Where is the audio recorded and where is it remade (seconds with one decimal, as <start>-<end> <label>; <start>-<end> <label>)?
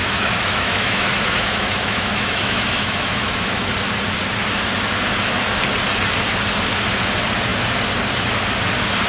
0.0-3.7 remade; 3.7-9.1 recorded